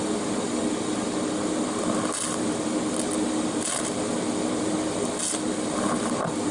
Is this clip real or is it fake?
real